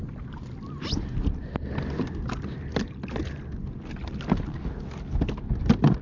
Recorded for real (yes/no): yes